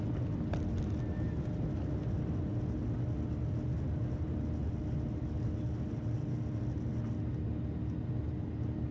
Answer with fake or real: real